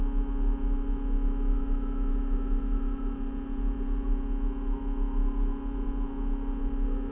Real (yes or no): yes